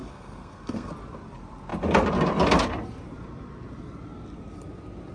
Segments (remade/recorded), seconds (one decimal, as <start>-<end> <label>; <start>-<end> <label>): 0.0-0.9 remade; 0.9-5.1 recorded